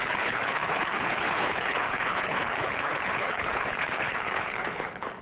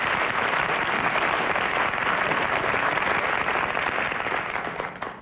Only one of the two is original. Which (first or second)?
second